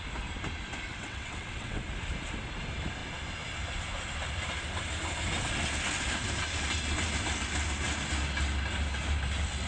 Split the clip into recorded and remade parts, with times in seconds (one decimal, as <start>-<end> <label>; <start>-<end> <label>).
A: 0.0-0.9 recorded; 0.9-1.8 remade; 1.8-9.7 recorded